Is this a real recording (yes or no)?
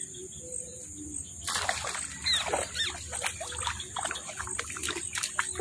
yes